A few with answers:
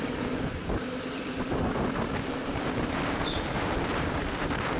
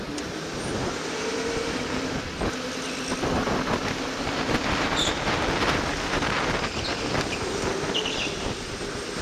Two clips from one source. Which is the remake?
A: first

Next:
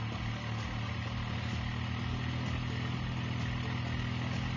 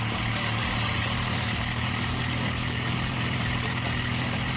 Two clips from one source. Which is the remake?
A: second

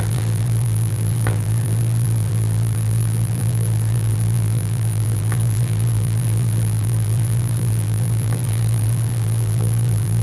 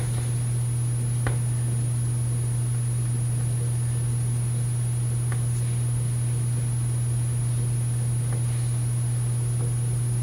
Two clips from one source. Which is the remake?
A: first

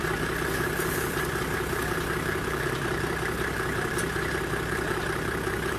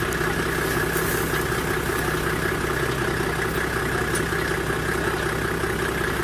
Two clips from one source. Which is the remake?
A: first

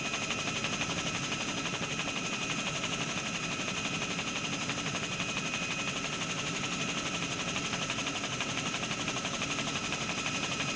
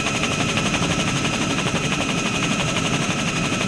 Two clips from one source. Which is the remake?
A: second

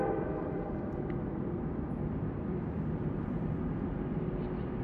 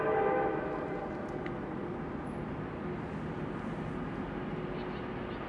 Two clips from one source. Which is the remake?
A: first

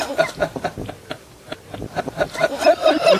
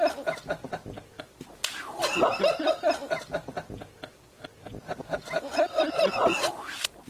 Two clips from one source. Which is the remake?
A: first